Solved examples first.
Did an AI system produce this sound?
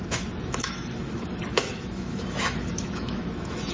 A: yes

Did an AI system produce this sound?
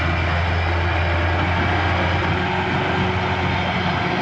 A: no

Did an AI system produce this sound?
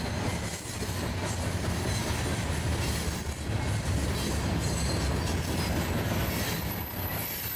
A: no